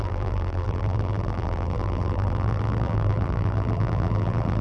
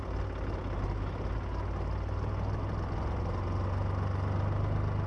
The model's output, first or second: first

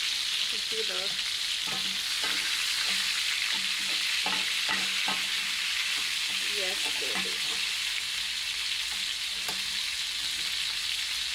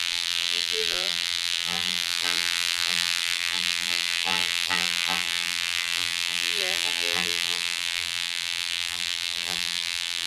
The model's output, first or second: second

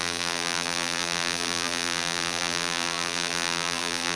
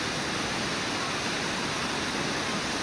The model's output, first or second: first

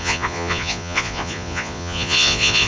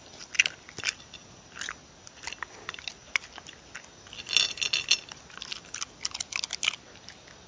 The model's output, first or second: first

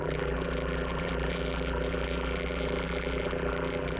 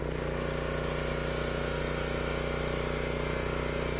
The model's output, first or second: first